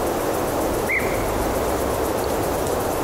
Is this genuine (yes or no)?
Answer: yes